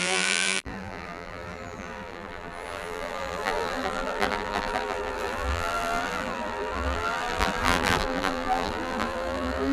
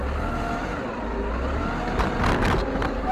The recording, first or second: second